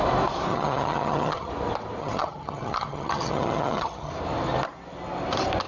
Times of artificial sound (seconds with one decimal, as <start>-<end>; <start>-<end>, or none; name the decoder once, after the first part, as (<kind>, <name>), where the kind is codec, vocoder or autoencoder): 0.5-1.5 (vocoder, HiFi-GAN); 2.0-4.1